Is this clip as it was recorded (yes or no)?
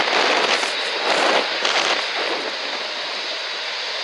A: yes